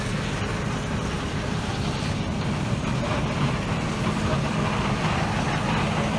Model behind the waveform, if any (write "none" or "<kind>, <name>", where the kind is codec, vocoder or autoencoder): vocoder, BigVGAN v2